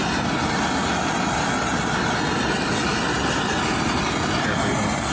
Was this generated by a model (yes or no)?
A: no